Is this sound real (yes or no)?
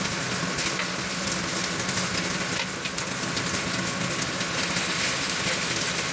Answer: yes